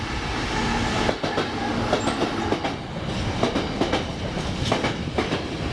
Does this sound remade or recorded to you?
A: recorded